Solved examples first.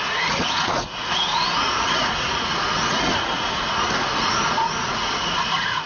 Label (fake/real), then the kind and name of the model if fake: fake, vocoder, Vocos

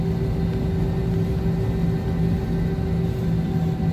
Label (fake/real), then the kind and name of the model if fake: real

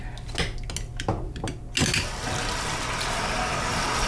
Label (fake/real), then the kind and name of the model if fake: real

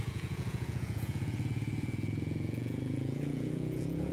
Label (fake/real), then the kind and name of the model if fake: fake, vocoder, Vocos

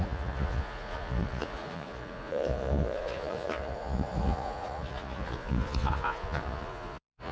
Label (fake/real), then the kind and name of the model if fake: fake, vocoder, Vocos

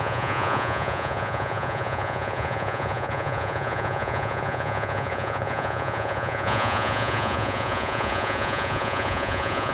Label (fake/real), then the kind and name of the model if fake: fake, vocoder, Vocos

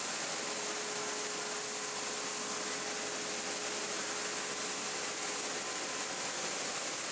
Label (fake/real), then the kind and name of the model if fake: real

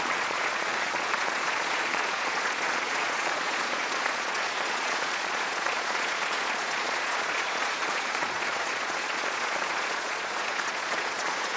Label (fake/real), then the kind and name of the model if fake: fake, vocoder, Vocos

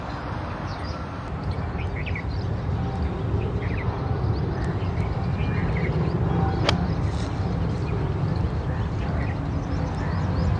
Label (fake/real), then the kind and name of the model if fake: real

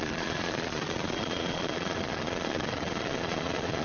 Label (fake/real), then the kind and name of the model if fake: fake, vocoder, Vocos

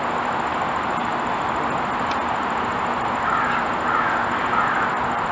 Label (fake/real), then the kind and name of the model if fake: real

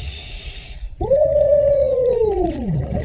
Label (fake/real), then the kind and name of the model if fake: fake, vocoder, Vocos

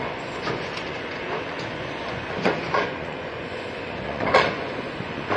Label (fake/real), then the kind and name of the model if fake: fake, vocoder, Vocos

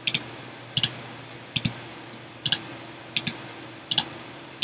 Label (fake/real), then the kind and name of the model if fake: real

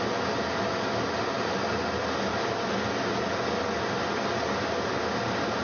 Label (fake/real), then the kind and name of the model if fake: real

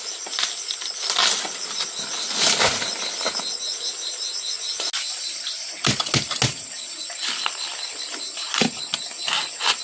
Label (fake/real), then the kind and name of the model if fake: real